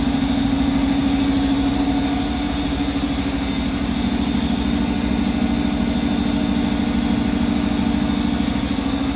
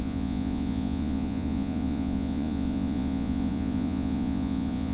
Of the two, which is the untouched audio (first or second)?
first